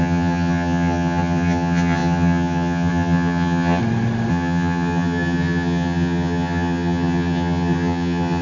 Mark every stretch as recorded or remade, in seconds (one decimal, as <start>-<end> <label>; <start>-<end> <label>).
0.0-3.8 remade; 3.8-4.3 recorded; 4.3-8.4 remade